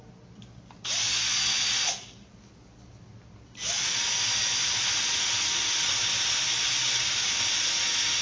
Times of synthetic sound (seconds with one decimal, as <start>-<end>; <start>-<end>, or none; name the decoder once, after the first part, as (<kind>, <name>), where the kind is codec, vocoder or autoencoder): none